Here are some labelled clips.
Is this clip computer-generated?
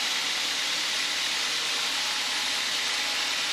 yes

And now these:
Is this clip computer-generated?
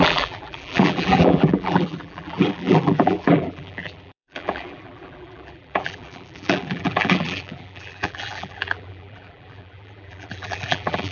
yes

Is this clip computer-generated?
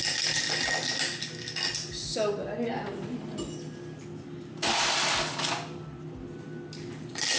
no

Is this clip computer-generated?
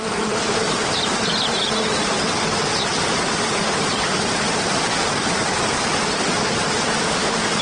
yes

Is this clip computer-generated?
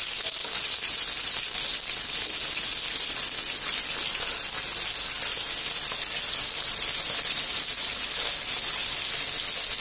no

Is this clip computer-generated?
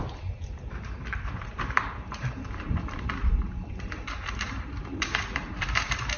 yes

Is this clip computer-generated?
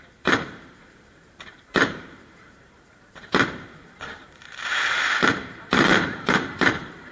yes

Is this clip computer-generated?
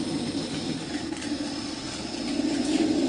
yes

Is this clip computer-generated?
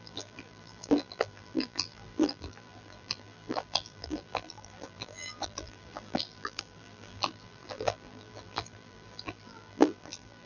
yes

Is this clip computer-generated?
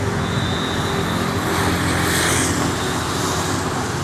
no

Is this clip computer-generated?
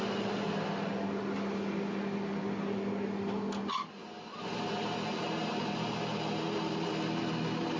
no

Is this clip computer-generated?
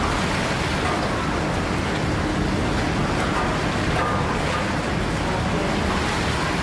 no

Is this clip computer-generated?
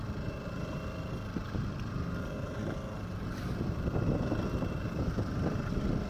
no